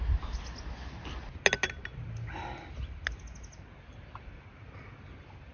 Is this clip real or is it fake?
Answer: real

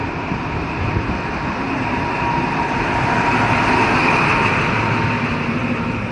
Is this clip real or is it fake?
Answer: real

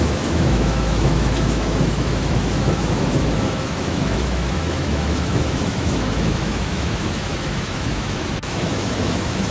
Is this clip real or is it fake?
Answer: fake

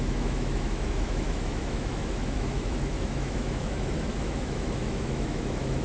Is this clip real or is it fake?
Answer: fake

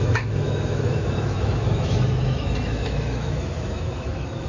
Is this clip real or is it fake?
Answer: fake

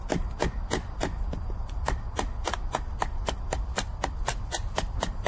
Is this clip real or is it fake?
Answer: real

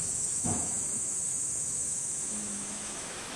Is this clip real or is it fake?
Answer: fake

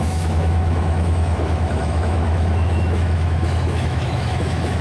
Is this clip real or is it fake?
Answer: fake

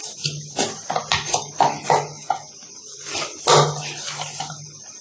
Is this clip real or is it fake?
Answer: real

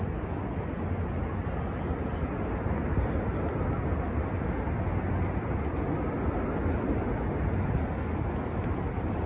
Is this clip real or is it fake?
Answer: real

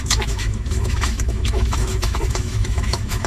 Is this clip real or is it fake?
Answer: fake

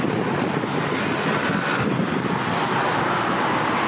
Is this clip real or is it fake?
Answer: real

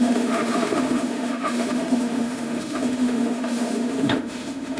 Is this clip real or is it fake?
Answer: fake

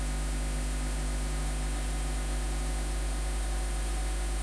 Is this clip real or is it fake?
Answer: fake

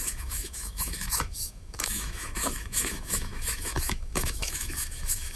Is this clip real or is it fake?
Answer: fake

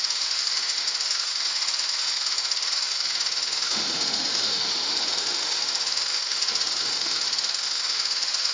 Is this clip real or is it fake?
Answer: fake